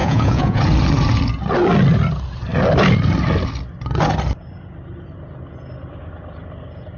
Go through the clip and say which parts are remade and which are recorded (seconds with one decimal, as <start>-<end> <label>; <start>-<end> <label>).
0.0-0.6 remade; 0.6-7.0 recorded